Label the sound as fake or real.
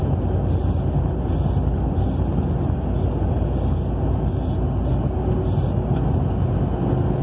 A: real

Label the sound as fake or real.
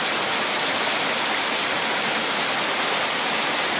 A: real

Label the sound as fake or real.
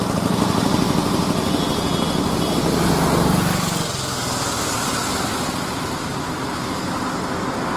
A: real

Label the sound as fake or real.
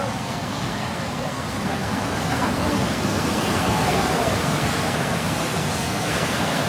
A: fake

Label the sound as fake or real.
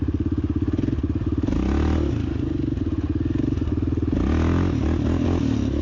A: real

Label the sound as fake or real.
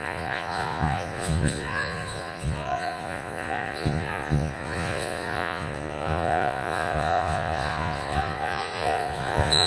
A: fake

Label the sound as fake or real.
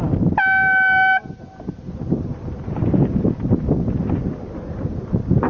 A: real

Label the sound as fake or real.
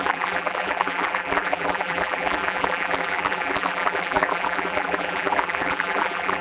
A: fake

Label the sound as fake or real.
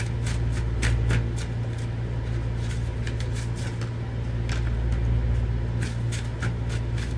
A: real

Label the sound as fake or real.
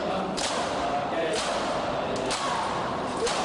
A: real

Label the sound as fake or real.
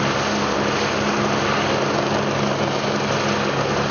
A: real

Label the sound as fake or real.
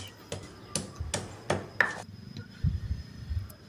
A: real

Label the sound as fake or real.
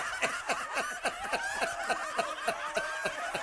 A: real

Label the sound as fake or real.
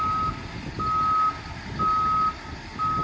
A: real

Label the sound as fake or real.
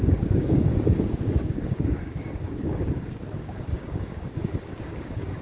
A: fake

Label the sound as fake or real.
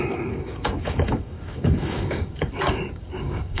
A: fake